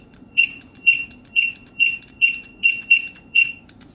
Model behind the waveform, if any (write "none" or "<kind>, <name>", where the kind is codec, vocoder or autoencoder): vocoder, Vocos